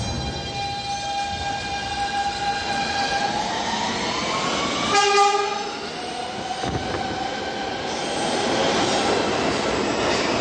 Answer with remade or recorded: recorded